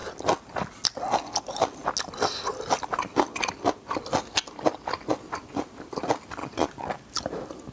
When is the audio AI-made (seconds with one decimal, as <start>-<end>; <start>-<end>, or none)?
6.4-6.9